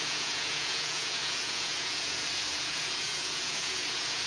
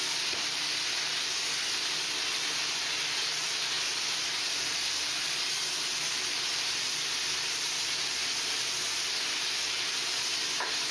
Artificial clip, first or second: first